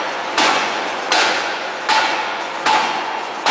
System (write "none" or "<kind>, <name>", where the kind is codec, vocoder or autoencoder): vocoder, Vocos